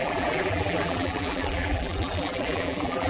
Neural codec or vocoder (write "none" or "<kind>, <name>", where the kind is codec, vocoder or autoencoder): vocoder, BigVGAN v2